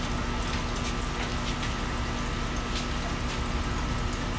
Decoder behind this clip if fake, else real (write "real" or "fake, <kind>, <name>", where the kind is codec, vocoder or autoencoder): real